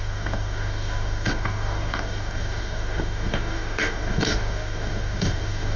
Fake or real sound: fake